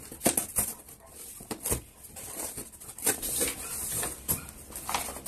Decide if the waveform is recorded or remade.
recorded